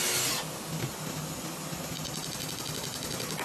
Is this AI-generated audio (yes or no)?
no